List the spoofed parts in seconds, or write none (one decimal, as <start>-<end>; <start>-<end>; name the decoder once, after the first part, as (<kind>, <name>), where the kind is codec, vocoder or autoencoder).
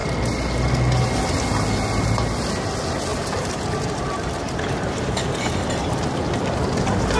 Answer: 3.1-7.2 (vocoder, BigVGAN v2)